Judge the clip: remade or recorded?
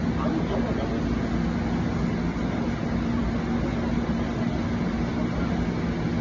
recorded